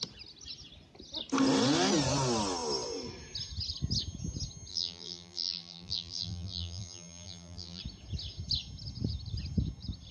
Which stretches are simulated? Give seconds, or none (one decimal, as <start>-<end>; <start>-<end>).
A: 4.7-7.8